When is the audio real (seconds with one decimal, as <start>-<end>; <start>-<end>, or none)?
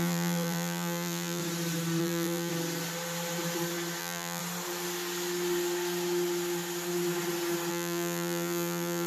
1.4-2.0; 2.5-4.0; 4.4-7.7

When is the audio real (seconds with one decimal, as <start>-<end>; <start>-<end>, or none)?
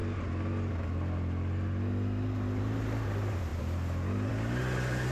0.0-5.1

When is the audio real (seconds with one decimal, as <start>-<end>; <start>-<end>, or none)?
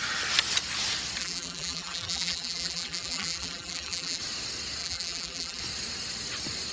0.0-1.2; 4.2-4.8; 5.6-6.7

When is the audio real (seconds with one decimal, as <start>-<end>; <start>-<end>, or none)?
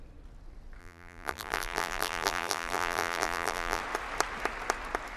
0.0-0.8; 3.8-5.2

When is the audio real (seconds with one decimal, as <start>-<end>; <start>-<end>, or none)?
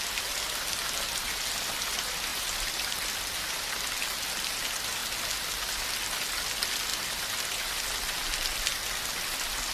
0.0-2.3; 4.0-6.9; 7.8-9.7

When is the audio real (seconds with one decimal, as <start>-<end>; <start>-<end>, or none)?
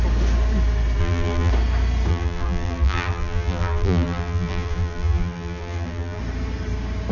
0.0-1.0; 1.5-2.1; 6.2-7.1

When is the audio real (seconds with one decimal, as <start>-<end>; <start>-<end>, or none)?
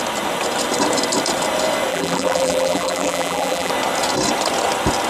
0.0-1.9; 3.7-5.1